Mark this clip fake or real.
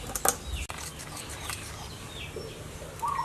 real